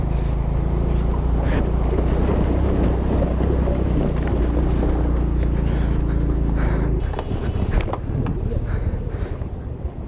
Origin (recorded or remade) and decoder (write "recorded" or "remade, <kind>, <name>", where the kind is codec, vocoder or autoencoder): recorded